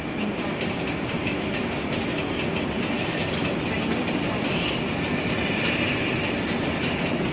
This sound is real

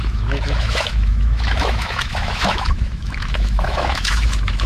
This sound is fake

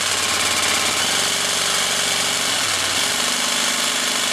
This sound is real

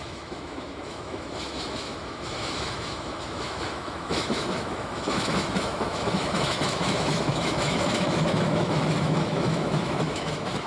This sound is fake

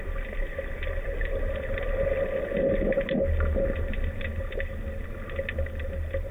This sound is real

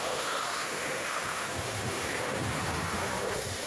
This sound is fake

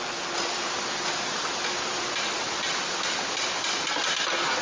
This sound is real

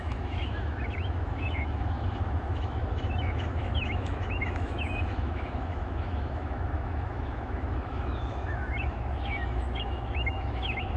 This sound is fake